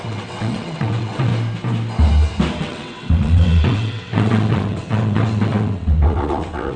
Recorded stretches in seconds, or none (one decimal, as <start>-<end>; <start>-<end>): 1.3-2.6

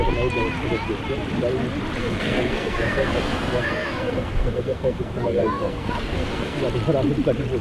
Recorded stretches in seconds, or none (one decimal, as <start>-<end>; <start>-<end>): 0.0-2.0; 6.6-7.6

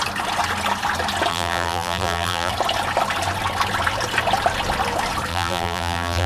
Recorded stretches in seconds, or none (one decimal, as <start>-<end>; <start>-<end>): 0.0-1.3; 2.5-5.3

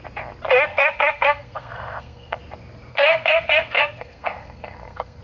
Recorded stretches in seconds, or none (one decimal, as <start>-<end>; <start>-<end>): 0.0-0.7; 2.4-2.9

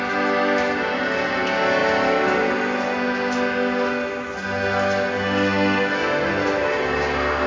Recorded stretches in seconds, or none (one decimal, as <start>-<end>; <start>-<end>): 0.0-7.5

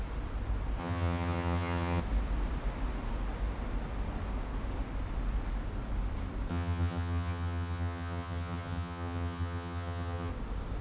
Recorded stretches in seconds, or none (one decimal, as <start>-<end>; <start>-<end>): 0.0-0.8; 2.0-6.5; 10.3-10.8